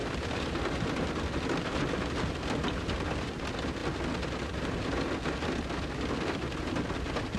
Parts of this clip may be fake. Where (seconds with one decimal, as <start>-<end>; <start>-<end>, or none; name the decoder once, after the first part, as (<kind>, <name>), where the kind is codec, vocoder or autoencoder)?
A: 0.0-0.9 (vocoder, BigVGAN v2)